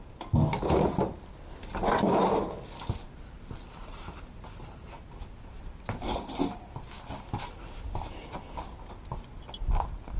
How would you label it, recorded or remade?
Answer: recorded